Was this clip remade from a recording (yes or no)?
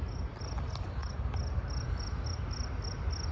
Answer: no